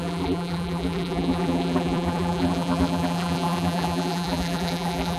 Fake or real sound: fake